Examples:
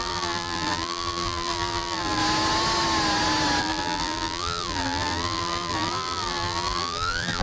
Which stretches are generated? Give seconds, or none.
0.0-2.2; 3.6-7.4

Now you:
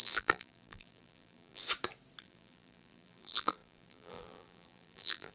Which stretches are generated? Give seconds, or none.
0.0-1.6; 2.2-5.3